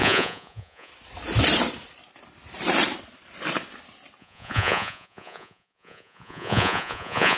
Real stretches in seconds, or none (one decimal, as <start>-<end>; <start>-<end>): 0.9-4.2